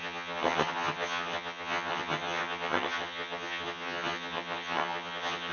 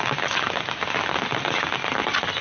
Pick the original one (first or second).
second